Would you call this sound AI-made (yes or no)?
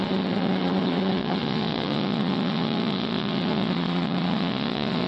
yes